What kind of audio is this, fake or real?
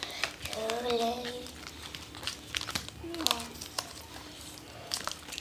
real